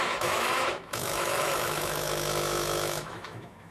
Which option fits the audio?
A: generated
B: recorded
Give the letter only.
A